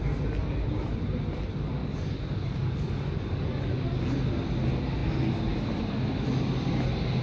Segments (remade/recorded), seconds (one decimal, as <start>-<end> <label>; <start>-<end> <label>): 0.0-1.8 recorded; 1.8-4.0 remade; 4.0-7.2 recorded